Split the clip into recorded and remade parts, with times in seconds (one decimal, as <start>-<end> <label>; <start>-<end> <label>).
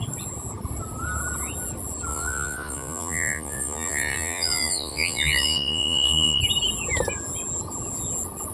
0.0-2.1 recorded; 2.1-6.4 remade; 6.4-8.5 recorded